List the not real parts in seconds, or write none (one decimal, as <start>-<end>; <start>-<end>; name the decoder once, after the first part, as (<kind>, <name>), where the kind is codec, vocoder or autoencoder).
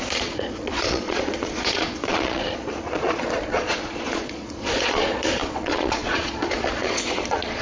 0.0-7.6 (vocoder, Vocos)